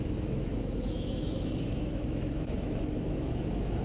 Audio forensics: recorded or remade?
remade